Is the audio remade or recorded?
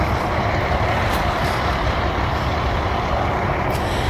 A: remade